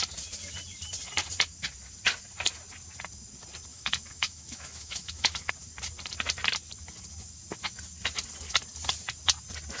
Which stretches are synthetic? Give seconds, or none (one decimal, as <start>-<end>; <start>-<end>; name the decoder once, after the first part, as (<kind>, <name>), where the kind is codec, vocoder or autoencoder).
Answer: 3.7-5.5 (autoencoder, DAC-VAE)